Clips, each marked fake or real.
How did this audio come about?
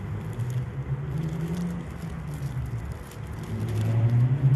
real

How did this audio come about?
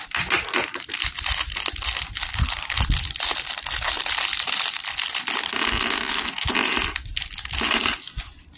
real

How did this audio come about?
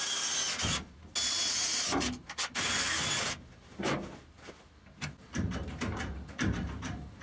real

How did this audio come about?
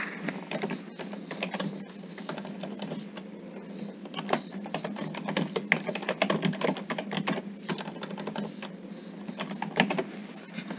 real